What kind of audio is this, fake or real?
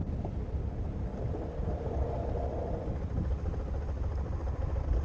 real